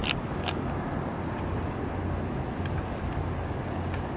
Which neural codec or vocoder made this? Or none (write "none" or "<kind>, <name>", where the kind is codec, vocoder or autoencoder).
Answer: none